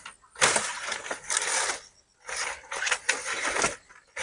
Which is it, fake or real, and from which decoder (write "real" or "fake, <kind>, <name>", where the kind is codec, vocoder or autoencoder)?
real